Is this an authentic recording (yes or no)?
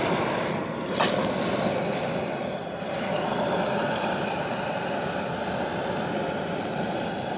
yes